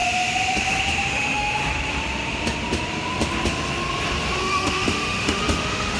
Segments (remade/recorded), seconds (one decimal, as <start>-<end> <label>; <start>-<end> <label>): 0.0-1.1 recorded; 1.1-1.6 remade; 1.6-4.4 recorded; 4.4-6.0 remade

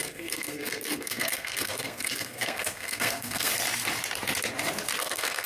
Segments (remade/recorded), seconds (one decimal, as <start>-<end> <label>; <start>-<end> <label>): 0.0-3.5 remade; 3.5-5.0 recorded; 5.0-5.5 remade

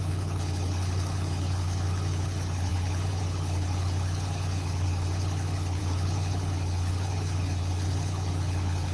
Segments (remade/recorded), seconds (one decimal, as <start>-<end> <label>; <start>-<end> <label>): 0.0-8.9 remade

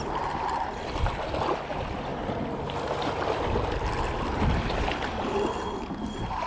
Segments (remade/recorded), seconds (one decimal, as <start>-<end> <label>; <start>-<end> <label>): 0.0-6.5 recorded

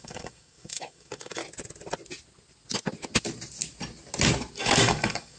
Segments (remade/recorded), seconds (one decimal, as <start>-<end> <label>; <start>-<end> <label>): 0.0-1.4 remade; 1.4-4.6 recorded; 4.6-5.4 remade